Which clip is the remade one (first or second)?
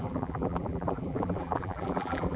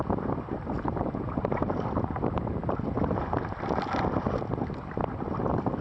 first